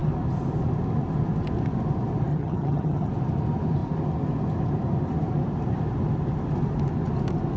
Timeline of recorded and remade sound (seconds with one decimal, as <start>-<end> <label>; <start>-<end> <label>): 0.0-2.3 recorded; 2.3-3.1 remade; 3.1-7.6 recorded